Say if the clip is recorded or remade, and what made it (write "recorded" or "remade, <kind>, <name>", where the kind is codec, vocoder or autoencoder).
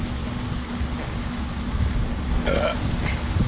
recorded